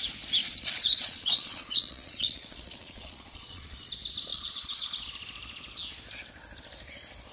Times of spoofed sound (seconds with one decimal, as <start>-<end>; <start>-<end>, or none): 0.4-3.9; 4.3-4.9